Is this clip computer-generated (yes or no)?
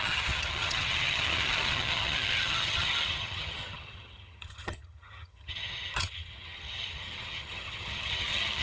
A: yes